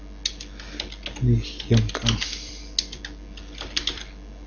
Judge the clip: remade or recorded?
recorded